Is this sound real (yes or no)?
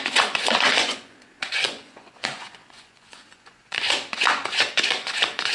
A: no